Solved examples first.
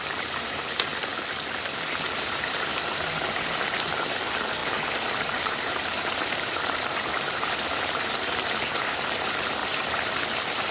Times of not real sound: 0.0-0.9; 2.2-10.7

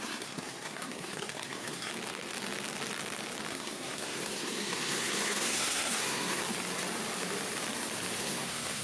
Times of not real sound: 0.0-1.9; 3.5-6.4; 8.2-8.8

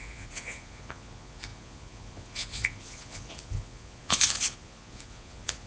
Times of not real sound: 0.0-5.7

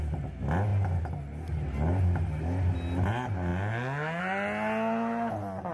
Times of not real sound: none

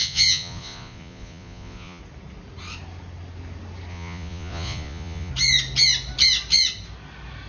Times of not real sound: 0.0-2.0; 3.9-5.3

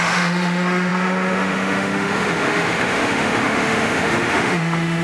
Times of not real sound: 0.0-5.0

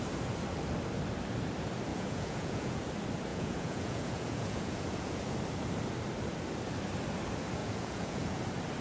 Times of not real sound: 1.9-2.9; 3.3-5.2; 7.6-8.4